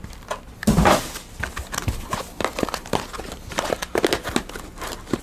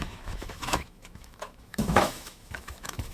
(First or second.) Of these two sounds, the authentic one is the first